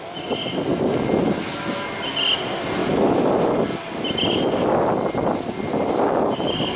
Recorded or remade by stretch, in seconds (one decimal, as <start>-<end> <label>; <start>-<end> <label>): 0.0-6.8 recorded